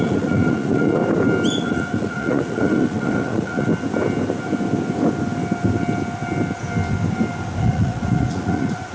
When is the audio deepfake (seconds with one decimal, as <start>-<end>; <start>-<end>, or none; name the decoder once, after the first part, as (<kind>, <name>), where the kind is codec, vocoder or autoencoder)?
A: 0.0-1.0 (vocoder, Vocos); 1.6-3.7; 7.6-8.9